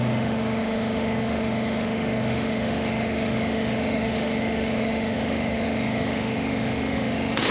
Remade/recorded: remade